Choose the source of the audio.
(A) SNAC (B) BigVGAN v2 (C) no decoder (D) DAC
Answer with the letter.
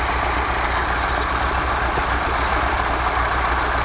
C